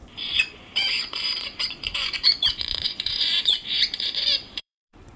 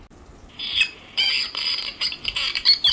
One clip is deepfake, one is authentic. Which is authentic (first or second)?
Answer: second